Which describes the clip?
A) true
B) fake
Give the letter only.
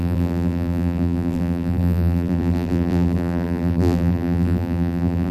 B